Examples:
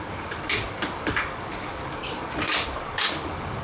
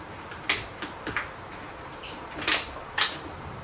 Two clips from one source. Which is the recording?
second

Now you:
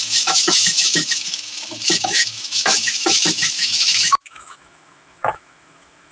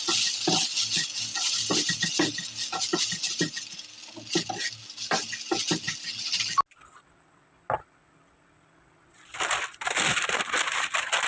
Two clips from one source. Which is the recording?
second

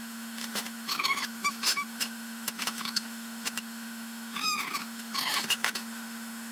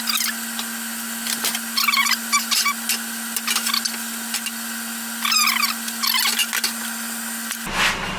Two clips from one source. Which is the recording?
second